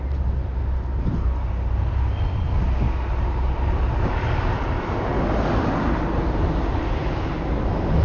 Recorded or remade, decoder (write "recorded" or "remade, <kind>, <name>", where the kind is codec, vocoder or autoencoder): recorded